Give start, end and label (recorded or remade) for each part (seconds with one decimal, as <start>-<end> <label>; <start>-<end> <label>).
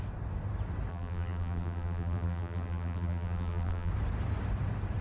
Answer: 0.0-0.9 recorded; 0.9-3.9 remade; 3.9-5.0 recorded